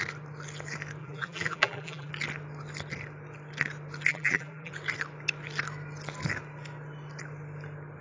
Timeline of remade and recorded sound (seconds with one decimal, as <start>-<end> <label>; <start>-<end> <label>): 0.0-1.0 recorded; 1.0-2.1 remade; 2.1-4.1 recorded; 4.1-4.7 remade; 4.7-8.0 recorded